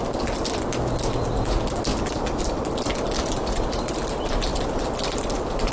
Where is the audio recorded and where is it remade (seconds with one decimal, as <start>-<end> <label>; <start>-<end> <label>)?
0.0-1.9 recorded; 1.9-2.4 remade; 2.4-5.7 recorded